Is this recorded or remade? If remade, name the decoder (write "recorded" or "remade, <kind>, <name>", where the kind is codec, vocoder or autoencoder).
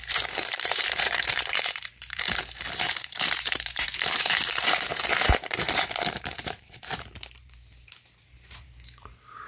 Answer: remade, vocoder, BigVGAN v2